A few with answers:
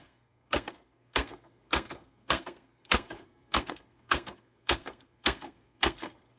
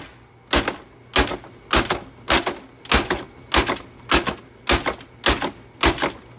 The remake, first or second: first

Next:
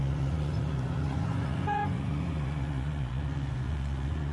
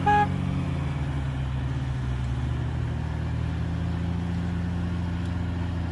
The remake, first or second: first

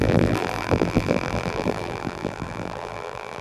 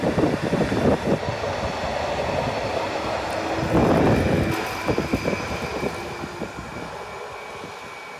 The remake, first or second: first